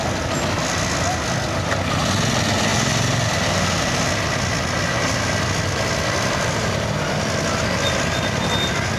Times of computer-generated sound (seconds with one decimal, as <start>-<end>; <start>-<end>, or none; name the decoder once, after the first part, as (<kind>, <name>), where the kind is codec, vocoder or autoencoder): none